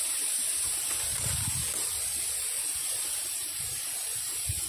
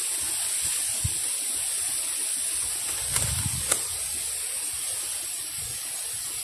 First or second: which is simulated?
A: first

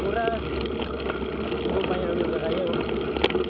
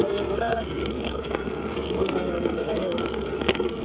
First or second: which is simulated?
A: second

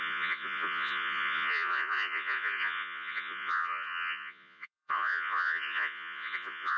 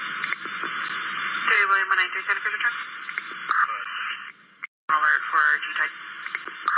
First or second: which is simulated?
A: first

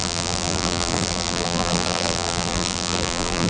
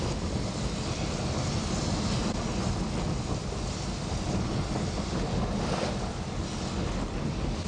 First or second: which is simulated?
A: first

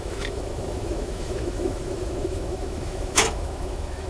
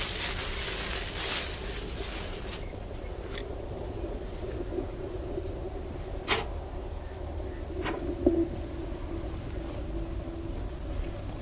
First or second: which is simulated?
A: first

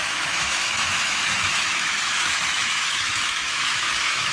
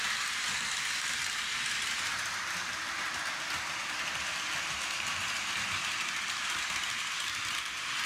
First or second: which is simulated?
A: first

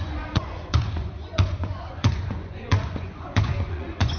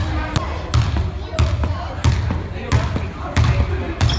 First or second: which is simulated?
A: first